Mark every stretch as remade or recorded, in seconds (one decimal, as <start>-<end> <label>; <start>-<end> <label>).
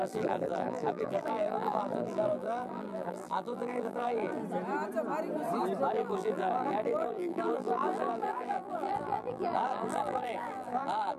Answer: 0.0-4.4 remade; 4.4-5.9 recorded; 5.9-11.2 remade